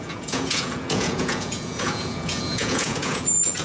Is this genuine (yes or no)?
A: no